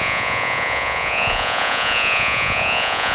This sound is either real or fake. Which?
fake